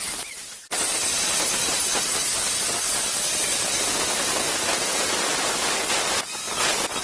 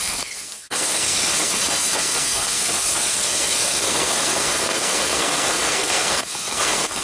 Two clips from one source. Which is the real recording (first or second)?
first